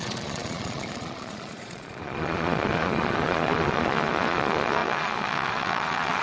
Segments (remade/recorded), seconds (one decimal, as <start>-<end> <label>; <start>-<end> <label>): 0.0-6.2 remade